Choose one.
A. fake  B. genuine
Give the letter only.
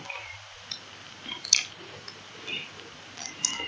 B